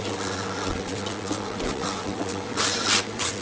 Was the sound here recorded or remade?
remade